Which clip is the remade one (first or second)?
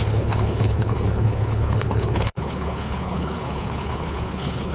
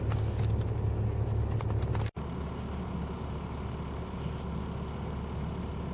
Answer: first